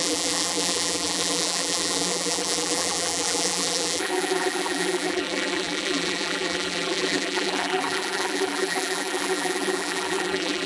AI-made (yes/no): yes